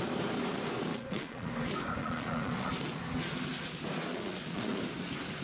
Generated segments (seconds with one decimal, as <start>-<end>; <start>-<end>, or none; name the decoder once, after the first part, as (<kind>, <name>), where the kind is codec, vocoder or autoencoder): 0.9-1.5 (vocoder, Vocos); 2.0-2.7; 4.0-4.8